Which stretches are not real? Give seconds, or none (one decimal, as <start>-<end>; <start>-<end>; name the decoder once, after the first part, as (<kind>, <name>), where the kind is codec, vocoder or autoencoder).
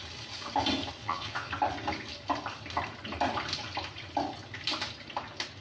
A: 1.0-1.5 (vocoder, Vocos)